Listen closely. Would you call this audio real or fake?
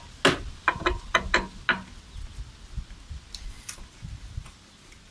real